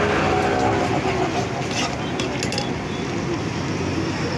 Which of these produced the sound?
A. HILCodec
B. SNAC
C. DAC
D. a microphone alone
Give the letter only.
D